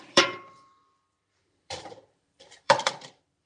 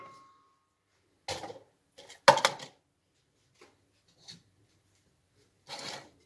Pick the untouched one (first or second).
second